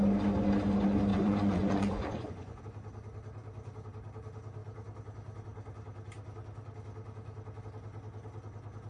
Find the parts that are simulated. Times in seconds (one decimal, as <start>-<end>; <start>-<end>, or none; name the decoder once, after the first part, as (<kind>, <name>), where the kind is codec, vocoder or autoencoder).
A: 1.1-2.6 (vocoder, Vocos)